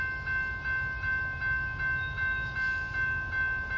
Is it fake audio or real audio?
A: real